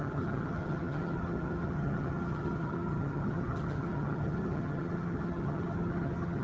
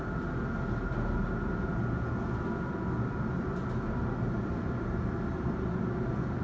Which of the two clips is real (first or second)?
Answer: second